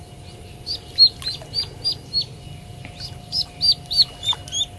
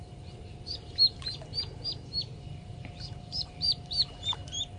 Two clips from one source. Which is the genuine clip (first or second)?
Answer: first